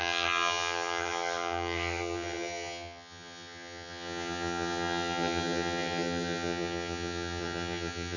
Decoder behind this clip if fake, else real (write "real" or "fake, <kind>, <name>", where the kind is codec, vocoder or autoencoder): fake, vocoder, HiFi-GAN